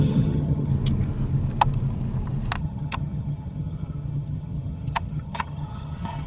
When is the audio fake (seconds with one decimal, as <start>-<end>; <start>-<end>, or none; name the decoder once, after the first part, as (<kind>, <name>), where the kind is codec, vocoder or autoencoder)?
0.0-0.7 (vocoder, HiFi-GAN); 2.6-6.3